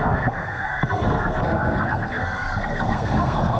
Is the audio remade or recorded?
remade